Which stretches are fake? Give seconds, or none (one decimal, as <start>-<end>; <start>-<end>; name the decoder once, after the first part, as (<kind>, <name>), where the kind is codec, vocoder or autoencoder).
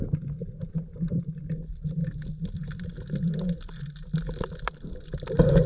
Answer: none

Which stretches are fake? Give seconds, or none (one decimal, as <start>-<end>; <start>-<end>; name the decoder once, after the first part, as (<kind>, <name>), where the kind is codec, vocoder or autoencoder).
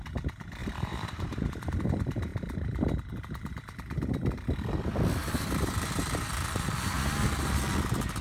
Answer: 0.6-1.9 (vocoder, BigVGAN v2); 5.2-7.6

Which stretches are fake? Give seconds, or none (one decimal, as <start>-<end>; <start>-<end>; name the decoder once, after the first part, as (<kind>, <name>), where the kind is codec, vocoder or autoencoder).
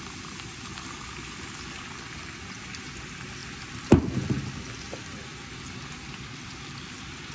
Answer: none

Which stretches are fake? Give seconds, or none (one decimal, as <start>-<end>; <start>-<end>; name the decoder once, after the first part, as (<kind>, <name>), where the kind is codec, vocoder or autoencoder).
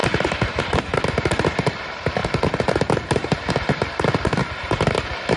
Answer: 0.0-2.2 (vocoder, BigVGAN v2); 3.1-5.4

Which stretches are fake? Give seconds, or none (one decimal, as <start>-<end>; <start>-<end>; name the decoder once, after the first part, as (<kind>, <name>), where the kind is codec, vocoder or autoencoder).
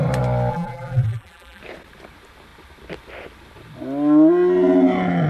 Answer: 0.5-1.6 (vocoder, BigVGAN v2)